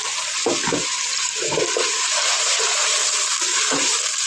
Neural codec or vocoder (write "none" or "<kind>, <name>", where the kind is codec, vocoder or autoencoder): vocoder, BigVGAN v2